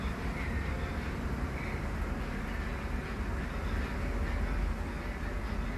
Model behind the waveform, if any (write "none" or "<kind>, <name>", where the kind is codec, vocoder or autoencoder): none